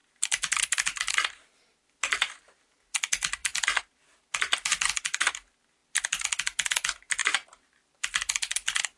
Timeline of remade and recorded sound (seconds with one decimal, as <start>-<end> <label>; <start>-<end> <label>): 0.0-9.0 recorded